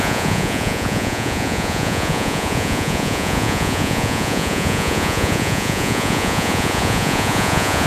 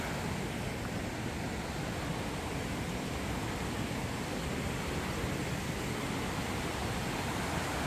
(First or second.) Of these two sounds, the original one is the second